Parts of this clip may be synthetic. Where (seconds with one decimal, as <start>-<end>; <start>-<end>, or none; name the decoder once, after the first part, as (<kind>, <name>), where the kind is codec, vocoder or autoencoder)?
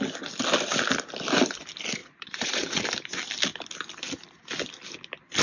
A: 2.0-2.8 (vocoder, Vocos)